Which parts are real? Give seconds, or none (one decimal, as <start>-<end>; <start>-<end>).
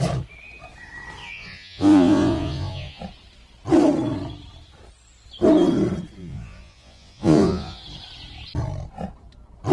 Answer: 0.0-1.2; 3.0-6.2; 7.8-9.7